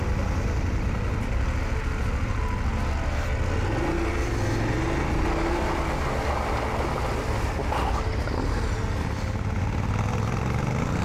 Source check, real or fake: real